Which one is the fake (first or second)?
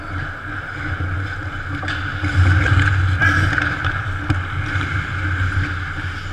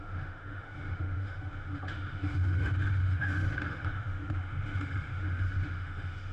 second